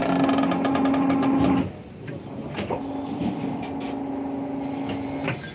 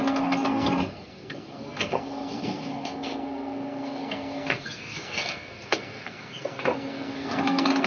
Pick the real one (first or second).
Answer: first